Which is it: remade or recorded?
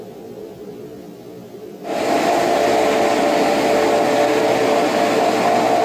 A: recorded